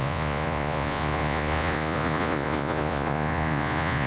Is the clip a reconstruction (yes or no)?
yes